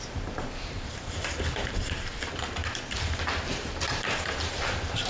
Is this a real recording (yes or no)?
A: no